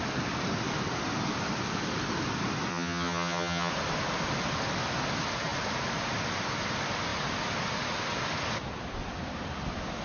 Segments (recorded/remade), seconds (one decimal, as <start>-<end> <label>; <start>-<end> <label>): 0.0-2.7 recorded; 2.7-3.7 remade; 3.7-10.0 recorded